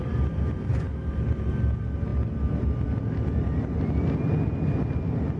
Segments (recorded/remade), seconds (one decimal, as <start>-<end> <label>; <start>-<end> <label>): 0.0-5.4 recorded